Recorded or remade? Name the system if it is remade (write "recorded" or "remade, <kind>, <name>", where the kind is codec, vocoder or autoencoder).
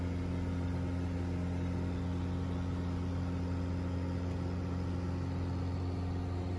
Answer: recorded